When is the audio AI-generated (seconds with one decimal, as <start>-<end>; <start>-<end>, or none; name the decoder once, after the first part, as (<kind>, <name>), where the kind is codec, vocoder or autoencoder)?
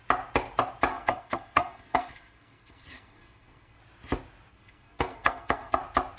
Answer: 0.9-3.8 (codec, SNAC); 4.5-5.8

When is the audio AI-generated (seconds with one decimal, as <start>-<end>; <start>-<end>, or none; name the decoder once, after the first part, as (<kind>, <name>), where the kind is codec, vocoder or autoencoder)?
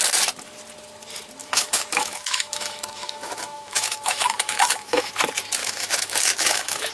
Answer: 1.4-5.1 (autoencoder, DAC-VAE); 5.6-6.9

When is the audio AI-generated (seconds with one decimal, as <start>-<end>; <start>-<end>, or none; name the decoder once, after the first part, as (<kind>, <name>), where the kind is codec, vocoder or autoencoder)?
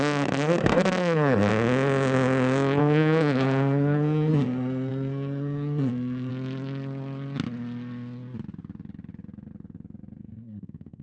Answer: 0.0-1.5 (codec, SNAC); 2.8-6.3; 10.2-11.0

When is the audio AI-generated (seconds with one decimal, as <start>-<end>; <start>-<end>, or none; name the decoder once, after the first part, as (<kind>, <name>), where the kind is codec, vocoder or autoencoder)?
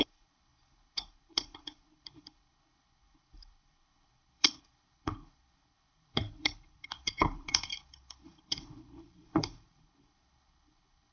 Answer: 0.0-11.1 (codec, HILCodec)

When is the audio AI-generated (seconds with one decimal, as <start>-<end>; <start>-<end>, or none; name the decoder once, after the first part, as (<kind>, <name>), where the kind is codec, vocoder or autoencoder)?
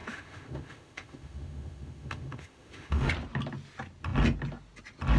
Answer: 0.0-3.1 (autoencoder, DAC-VAE)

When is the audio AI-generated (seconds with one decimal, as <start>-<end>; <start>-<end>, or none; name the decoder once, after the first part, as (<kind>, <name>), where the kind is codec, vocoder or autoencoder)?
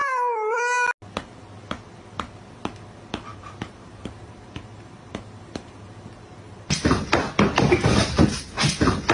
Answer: 3.3-5.7 (vocoder, BigVGAN v2)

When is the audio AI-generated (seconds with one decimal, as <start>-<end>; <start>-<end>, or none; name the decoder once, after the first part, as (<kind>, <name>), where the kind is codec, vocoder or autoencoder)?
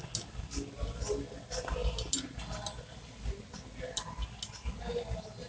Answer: none